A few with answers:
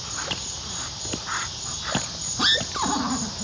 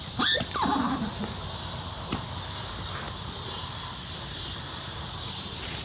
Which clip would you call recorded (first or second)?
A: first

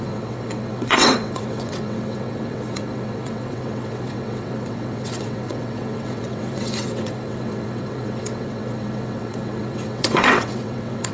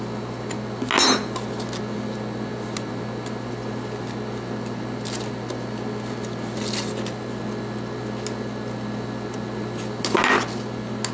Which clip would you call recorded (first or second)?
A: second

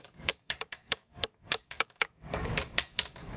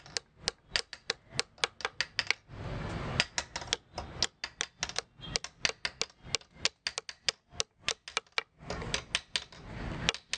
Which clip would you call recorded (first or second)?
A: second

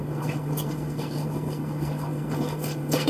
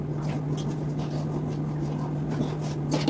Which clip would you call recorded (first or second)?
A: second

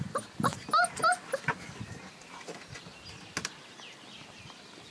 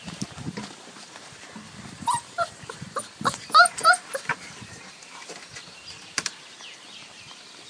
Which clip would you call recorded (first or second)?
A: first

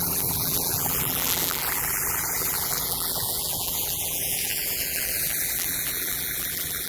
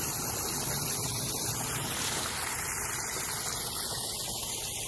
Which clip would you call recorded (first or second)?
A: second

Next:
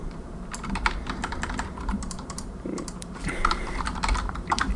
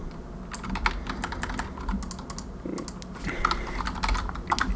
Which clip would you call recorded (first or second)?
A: second